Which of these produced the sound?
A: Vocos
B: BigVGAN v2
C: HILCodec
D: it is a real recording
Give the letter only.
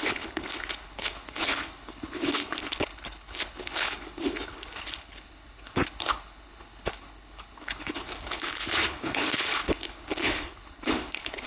C